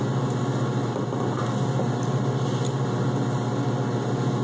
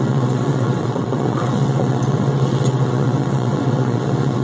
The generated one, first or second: second